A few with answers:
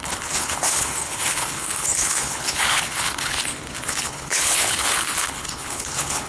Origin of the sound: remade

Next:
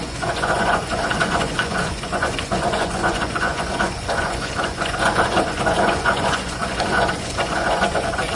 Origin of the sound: remade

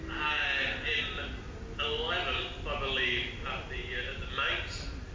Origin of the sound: recorded